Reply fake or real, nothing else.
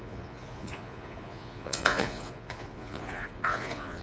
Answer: fake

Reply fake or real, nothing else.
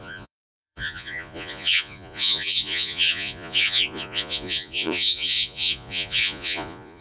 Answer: fake